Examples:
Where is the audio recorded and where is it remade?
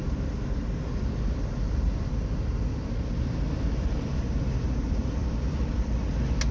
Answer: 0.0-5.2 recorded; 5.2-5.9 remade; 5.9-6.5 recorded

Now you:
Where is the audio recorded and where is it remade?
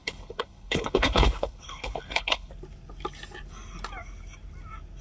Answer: 0.0-2.5 remade; 2.5-5.0 recorded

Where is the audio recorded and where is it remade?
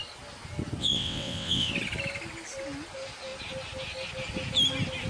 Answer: 0.0-0.8 recorded; 0.8-1.7 remade; 1.7-5.1 recorded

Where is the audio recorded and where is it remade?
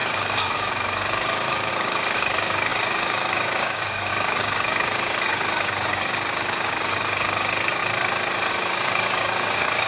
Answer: 0.0-7.8 remade; 7.8-8.5 recorded; 8.5-9.9 remade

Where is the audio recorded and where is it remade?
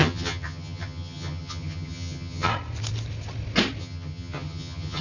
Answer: 0.0-2.5 remade; 2.5-3.8 recorded; 3.8-5.0 remade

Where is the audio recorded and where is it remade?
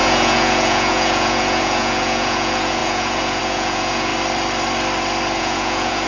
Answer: 0.0-4.1 remade; 4.1-5.4 recorded; 5.4-6.1 remade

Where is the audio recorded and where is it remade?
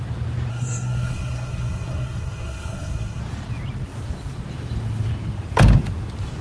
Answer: 0.0-0.5 recorded; 0.5-3.2 remade; 3.2-6.4 recorded